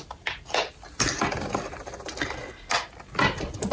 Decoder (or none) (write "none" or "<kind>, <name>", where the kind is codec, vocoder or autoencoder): none